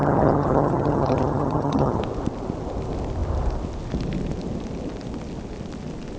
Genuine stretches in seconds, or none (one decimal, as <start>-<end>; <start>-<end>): 2.0-6.2